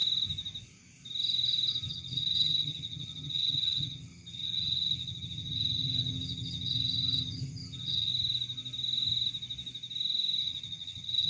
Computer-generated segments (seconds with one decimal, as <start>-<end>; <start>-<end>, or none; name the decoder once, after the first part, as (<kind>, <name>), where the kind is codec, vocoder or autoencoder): 1.9-8.1 (vocoder, HiFi-GAN); 10.4-11.3